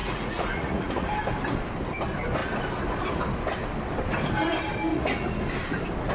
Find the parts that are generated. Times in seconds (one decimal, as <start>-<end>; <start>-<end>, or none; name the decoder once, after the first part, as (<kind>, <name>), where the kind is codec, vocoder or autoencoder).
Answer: 0.0-1.1 (vocoder, Vocos); 4.9-5.4